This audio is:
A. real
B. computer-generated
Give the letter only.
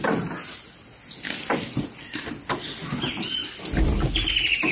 A